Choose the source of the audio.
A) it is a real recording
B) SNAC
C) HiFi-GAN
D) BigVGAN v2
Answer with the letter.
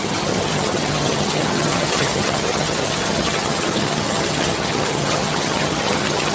C